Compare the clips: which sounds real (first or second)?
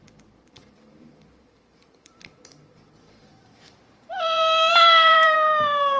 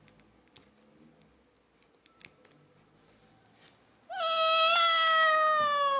second